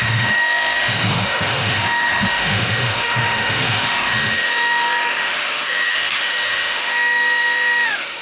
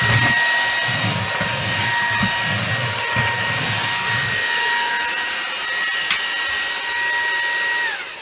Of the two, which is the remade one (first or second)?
first